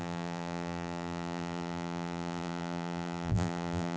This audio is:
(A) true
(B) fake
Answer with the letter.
B